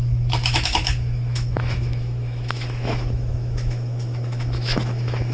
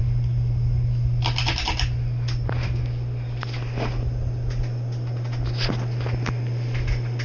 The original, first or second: second